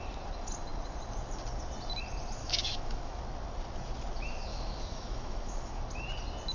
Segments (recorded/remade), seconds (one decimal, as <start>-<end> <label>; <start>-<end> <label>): 0.0-2.4 recorded; 2.4-3.2 remade; 3.2-4.5 recorded; 4.5-5.8 remade; 5.8-6.5 recorded